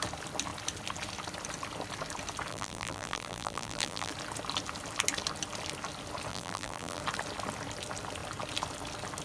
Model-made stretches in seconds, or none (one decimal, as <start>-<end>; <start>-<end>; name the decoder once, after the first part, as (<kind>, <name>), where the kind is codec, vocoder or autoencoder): 2.5-4.1 (vocoder, BigVGAN v2); 6.3-7.0